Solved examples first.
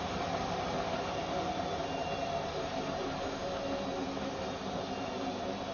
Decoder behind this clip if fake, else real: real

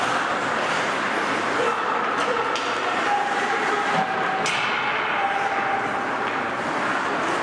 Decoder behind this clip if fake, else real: real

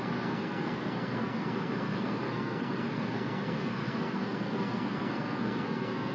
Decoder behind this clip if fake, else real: fake, codec, SNAC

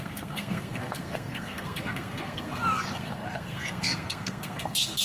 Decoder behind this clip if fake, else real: fake, codec, SNAC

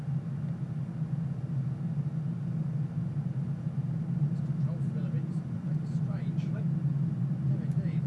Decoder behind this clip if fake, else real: real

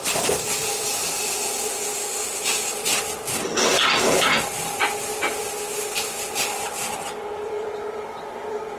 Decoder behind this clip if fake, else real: real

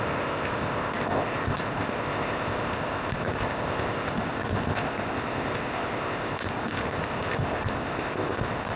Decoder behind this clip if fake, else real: fake, codec, ZipCodec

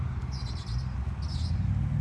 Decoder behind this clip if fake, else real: real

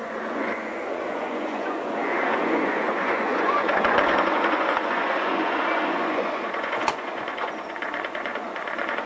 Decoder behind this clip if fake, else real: fake, vocoder, Vocos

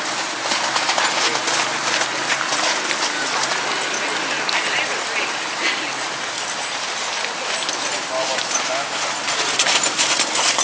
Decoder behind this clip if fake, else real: real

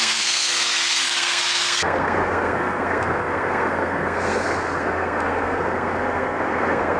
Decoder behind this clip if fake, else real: fake, codec, SNAC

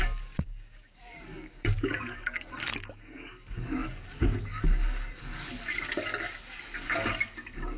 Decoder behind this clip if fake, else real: fake, codec, DAC